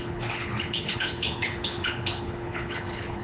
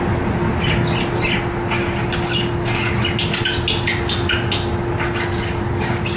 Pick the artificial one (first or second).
first